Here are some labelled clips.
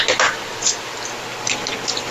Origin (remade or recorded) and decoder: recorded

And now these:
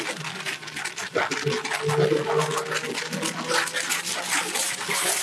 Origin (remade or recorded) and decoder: recorded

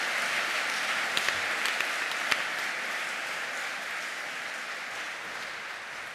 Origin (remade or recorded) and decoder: recorded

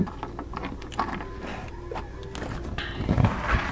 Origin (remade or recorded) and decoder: recorded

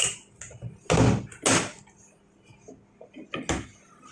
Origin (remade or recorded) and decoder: recorded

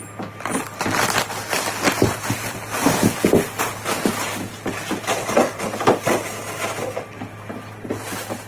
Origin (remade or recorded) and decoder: recorded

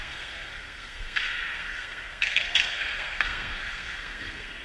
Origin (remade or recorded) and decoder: remade, codec, SNAC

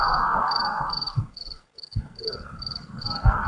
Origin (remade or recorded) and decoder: remade, codec, SNAC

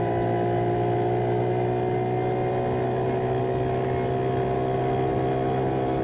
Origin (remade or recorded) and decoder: recorded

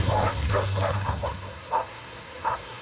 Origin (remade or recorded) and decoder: remade, codec, SNAC